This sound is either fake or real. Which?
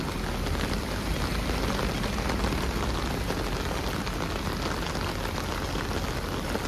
real